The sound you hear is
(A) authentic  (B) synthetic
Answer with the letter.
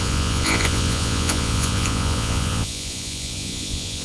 B